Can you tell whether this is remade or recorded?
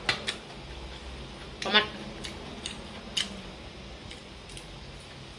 recorded